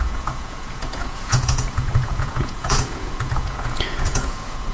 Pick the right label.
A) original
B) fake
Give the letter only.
B